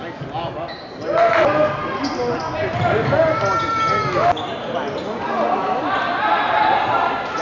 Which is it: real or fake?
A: real